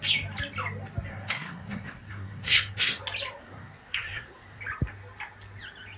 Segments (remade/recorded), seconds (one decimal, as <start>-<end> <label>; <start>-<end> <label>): 0.0-1.1 recorded; 1.1-3.0 remade; 3.0-3.4 recorded; 3.4-4.6 remade; 4.6-6.0 recorded